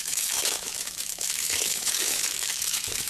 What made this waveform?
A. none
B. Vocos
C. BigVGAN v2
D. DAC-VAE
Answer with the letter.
D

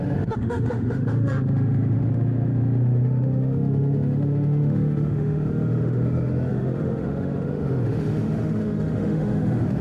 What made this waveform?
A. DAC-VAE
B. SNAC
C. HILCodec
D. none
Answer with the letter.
A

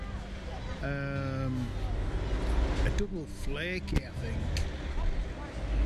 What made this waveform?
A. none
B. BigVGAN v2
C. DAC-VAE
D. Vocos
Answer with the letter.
A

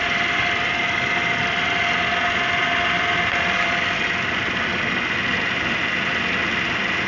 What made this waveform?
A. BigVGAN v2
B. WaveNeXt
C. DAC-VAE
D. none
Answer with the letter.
D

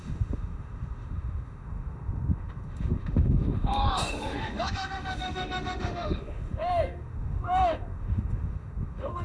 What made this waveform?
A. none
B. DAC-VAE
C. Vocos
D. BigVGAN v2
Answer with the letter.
B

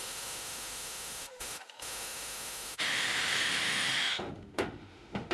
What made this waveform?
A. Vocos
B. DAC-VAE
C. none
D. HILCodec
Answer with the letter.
B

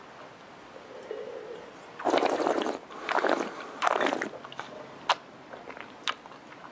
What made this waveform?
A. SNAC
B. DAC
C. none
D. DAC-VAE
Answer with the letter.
C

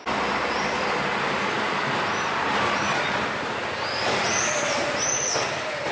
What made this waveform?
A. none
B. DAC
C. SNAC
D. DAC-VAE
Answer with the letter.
A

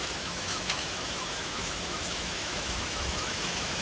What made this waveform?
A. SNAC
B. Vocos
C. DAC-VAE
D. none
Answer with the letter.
C